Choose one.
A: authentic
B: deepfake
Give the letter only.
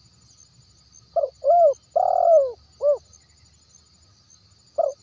A